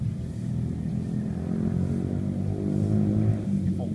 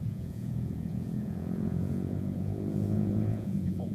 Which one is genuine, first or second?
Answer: first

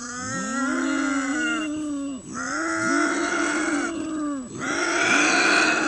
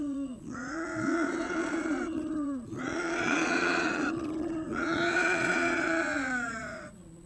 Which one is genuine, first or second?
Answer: first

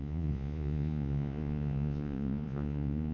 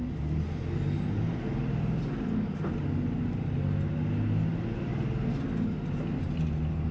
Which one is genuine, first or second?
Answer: second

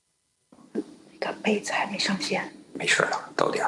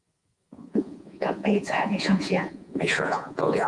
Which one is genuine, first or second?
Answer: first